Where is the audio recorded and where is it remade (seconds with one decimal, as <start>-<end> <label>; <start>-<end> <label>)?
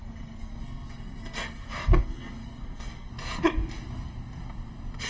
0.0-3.1 remade; 3.1-5.1 recorded